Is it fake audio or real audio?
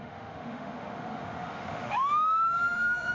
fake